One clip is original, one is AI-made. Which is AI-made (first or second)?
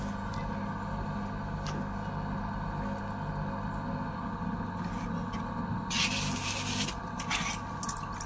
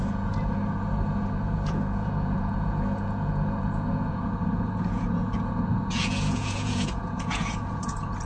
second